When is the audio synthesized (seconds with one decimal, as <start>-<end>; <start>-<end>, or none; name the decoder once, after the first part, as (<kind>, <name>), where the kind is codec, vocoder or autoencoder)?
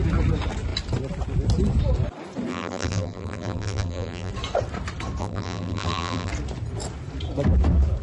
2.5-4.3 (vocoder, BigVGAN v2); 5.2-6.3